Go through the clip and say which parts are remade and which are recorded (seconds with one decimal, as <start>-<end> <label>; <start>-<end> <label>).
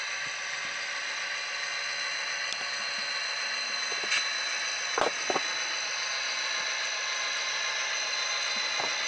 0.0-9.1 recorded